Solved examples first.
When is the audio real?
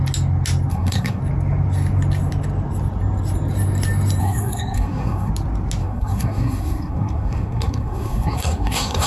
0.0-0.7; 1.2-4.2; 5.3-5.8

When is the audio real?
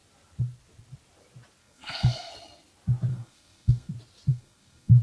0.0-1.6; 2.3-3.1; 3.9-4.3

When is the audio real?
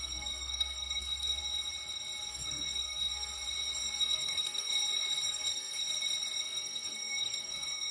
1.4-2.3; 3.3-4.0; 4.7-5.3; 5.8-6.4